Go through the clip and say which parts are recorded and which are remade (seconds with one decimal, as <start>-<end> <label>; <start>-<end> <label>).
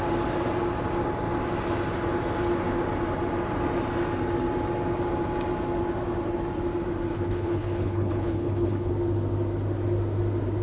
0.0-7.1 recorded; 7.1-8.9 remade; 8.9-10.6 recorded